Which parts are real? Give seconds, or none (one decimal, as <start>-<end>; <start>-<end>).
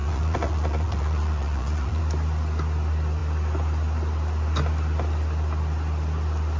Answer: 2.0-6.6